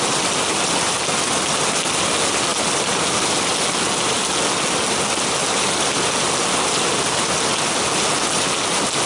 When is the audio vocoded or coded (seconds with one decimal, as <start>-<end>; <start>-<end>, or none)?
2.5-3.5